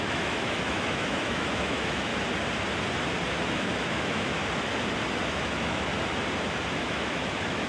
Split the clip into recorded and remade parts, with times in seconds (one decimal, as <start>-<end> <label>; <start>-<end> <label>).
0.0-2.1 remade; 2.1-3.5 recorded; 3.5-4.4 remade; 4.4-5.2 recorded; 5.2-5.9 remade; 5.9-6.8 recorded; 6.8-7.7 remade